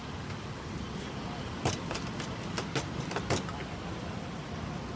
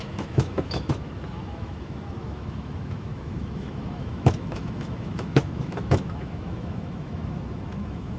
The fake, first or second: second